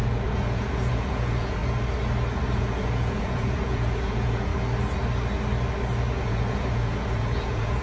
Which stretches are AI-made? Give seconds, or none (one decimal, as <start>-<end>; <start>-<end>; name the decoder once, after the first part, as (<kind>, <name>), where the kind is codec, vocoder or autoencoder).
0.0-1.6 (vocoder, Vocos); 2.5-4.5; 6.2-7.8